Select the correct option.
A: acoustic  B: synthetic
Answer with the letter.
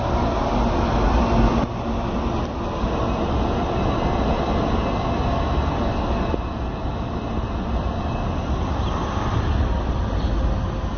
A